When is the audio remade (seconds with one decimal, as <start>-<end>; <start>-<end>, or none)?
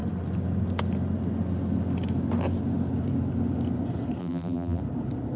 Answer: 4.2-4.8